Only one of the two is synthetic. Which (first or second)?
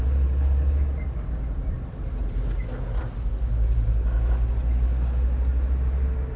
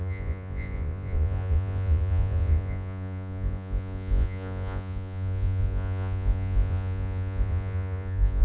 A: second